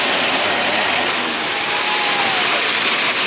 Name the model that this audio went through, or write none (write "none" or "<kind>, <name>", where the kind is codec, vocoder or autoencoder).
none